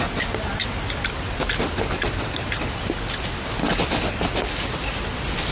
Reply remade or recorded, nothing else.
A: recorded